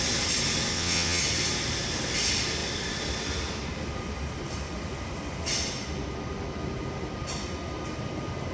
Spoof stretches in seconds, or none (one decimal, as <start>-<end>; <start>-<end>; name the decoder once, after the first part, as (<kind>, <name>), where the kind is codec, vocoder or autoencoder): 0.7-1.2 (vocoder, WaveNeXt)